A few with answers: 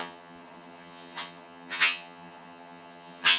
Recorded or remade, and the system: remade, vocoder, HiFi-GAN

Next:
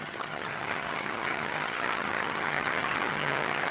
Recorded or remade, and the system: remade, vocoder, HiFi-GAN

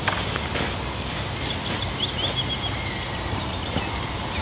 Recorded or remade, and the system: recorded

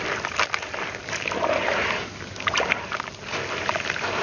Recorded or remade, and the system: recorded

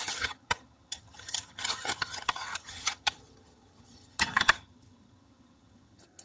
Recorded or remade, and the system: remade, vocoder, HiFi-GAN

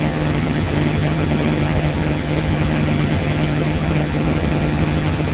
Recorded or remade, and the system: remade, vocoder, HiFi-GAN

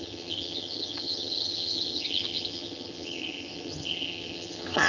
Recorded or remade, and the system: remade, vocoder, HiFi-GAN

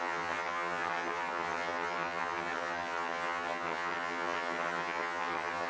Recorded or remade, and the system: remade, vocoder, HiFi-GAN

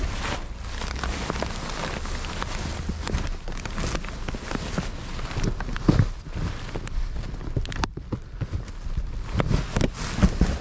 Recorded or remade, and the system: recorded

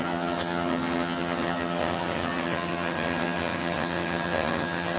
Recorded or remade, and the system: remade, vocoder, HiFi-GAN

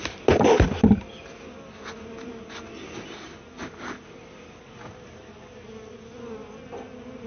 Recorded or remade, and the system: recorded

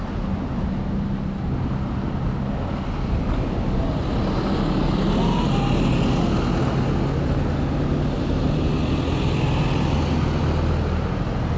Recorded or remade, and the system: recorded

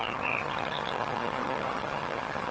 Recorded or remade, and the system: remade, vocoder, HiFi-GAN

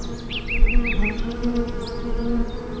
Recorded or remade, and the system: recorded